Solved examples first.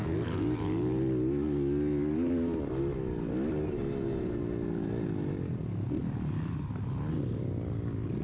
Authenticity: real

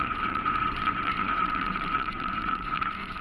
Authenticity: fake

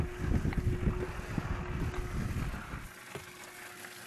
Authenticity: real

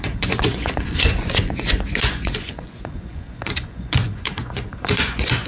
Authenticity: fake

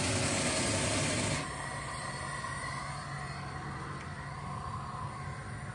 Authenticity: real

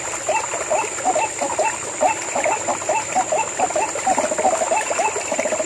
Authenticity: real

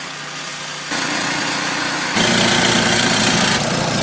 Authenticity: real